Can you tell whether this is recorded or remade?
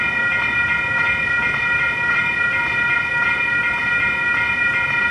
recorded